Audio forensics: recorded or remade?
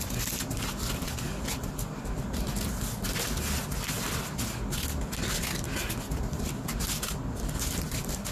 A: recorded